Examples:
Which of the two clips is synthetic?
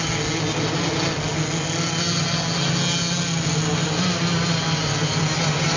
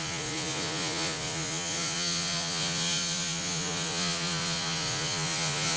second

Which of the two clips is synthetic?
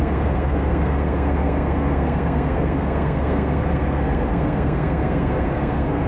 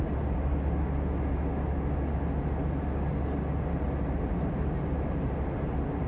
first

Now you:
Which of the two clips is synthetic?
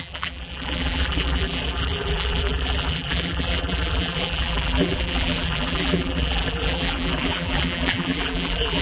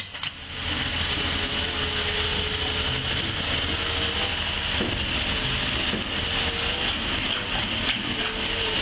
first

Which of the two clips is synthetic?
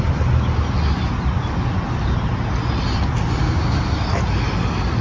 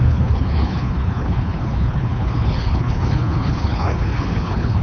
second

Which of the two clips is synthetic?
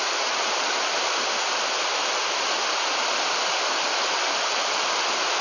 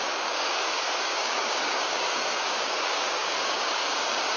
second